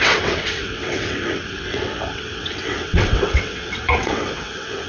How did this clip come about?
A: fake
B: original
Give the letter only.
A